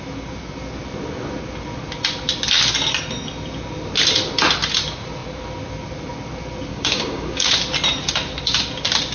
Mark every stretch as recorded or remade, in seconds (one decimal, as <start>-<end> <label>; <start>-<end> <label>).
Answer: 0.0-6.7 recorded; 6.7-7.5 remade; 7.5-9.1 recorded